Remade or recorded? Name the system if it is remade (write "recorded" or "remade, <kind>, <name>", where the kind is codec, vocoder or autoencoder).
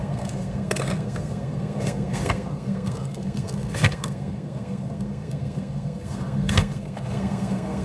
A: remade, codec, SNAC